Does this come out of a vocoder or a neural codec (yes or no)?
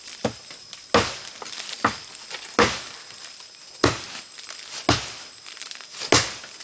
no